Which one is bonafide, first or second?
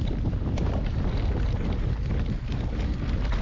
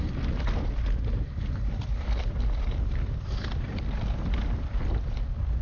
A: first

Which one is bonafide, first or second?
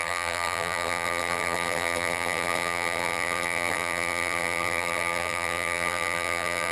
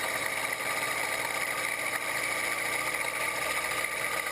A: second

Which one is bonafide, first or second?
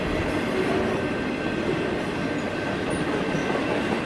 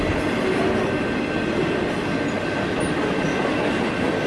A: second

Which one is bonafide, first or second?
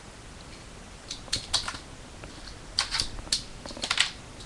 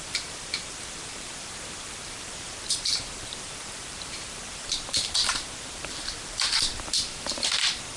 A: first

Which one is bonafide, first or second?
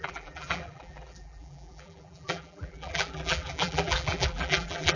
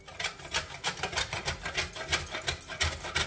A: second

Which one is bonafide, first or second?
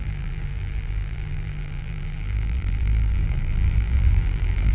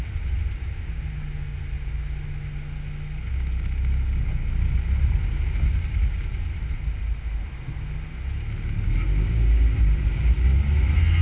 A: second